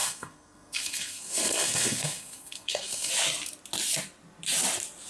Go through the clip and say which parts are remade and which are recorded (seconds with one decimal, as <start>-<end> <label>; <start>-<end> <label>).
0.0-3.1 remade; 3.1-5.1 recorded